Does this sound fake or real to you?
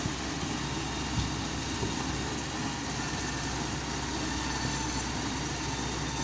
real